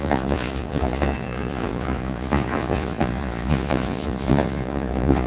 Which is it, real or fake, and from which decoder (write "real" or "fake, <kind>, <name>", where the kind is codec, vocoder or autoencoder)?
fake, vocoder, Vocos